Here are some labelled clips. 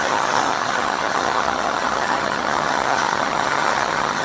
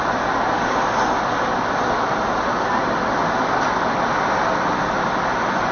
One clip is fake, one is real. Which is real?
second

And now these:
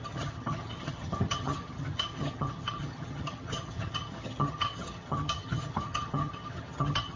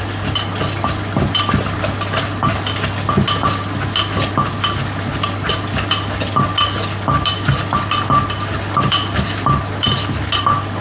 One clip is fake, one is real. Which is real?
second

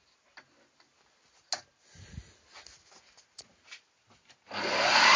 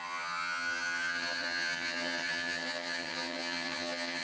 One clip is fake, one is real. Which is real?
first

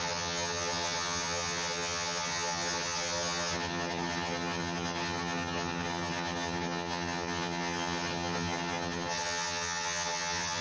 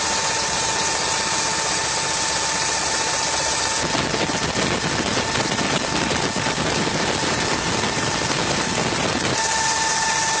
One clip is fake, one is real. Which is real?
second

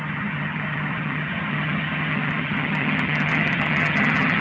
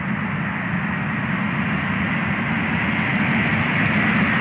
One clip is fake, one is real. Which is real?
second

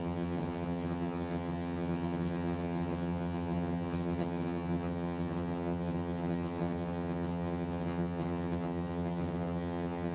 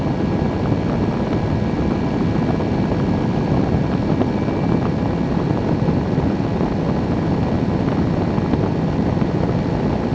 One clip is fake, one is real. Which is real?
second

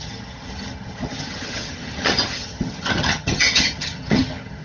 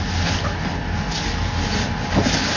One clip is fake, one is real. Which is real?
second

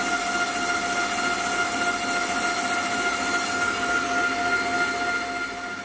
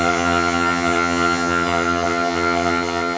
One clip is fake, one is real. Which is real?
first